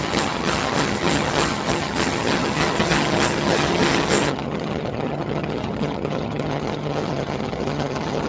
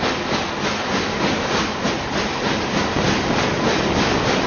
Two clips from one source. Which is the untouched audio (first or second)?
second